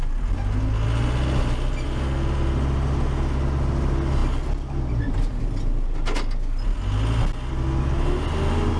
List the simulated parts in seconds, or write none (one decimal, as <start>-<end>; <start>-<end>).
none